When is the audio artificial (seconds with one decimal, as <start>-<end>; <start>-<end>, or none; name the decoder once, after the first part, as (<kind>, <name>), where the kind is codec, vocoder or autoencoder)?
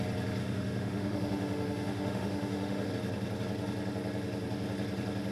0.4-2.9 (autoencoder, DAC-VAE)